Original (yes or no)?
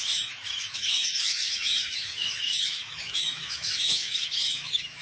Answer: no